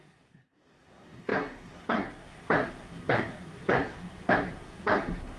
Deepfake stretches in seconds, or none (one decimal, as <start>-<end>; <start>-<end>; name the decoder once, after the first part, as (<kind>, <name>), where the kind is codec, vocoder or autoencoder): 0.0-5.4 (codec, SNAC)